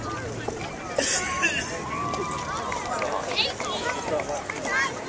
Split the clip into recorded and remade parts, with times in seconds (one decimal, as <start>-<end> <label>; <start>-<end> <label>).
0.0-5.1 recorded